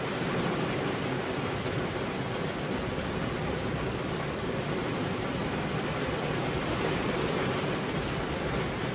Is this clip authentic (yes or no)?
yes